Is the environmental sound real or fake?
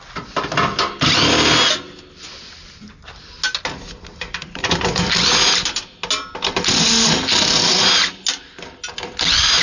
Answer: real